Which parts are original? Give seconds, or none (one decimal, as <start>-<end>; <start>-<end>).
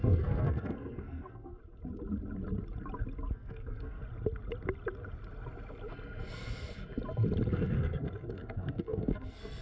1.6-3.3; 4.0-7.5